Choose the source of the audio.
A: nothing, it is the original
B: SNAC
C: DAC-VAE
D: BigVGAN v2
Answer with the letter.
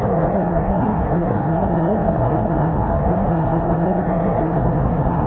B